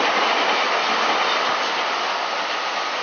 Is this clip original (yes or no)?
yes